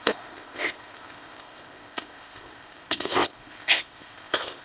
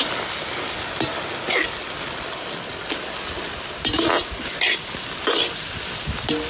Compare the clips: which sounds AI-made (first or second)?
first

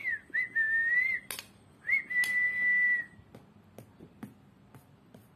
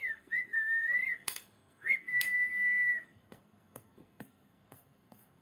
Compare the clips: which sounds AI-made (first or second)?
second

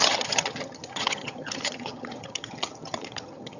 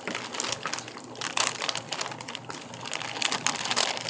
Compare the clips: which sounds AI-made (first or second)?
first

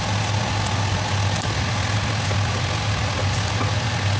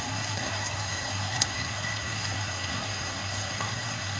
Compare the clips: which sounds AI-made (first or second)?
second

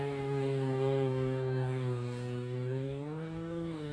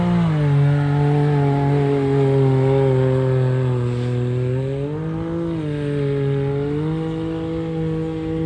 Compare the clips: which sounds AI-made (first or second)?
first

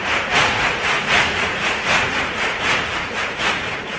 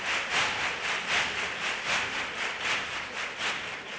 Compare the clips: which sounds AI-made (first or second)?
first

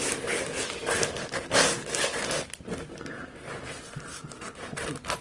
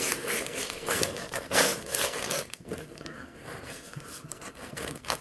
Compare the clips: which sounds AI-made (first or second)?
second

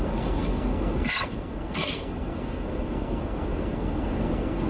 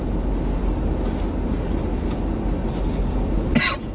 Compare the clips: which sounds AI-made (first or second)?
first